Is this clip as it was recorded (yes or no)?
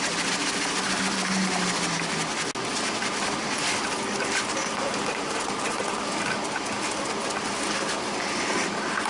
yes